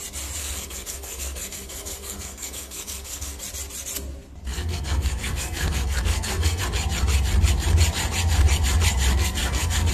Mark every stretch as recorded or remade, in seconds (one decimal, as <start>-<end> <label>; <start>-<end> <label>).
0.0-0.4 recorded; 0.4-3.4 remade; 3.4-4.5 recorded; 4.5-6.6 remade; 6.6-9.1 recorded; 9.1-9.9 remade